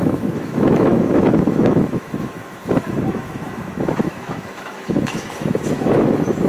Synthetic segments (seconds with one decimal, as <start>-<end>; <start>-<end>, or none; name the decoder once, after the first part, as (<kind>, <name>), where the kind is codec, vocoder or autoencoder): 0.0-2.6 (autoencoder, DAC-VAE); 3.1-6.5